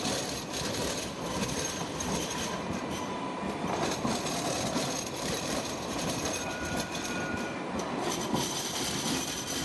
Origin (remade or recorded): remade